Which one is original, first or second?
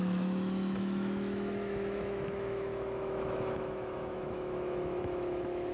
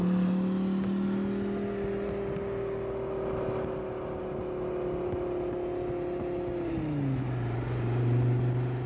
second